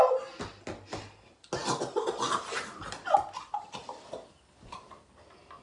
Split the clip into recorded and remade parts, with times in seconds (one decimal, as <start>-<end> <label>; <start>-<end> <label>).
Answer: 0.0-5.6 recorded